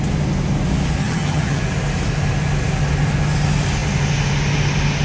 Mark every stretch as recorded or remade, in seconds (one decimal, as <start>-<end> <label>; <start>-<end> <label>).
0.0-1.0 recorded; 1.0-1.6 remade; 1.6-5.0 recorded